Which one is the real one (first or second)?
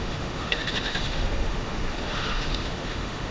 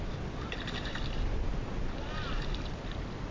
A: second